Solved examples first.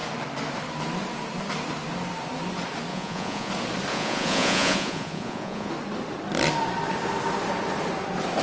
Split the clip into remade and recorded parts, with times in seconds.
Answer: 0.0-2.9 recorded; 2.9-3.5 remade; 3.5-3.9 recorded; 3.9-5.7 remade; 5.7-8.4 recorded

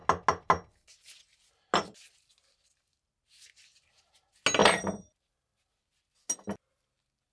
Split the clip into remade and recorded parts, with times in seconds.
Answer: 0.0-4.6 recorded; 4.6-5.1 remade; 5.1-7.3 recorded